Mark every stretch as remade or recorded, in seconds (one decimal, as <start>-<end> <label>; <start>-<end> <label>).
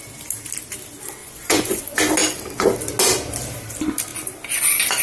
0.0-1.2 recorded; 1.2-1.8 remade; 1.8-5.0 recorded